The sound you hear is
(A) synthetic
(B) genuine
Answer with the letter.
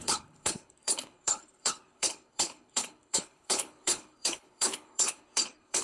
A